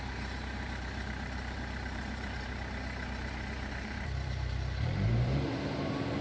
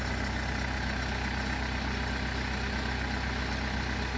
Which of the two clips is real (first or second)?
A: second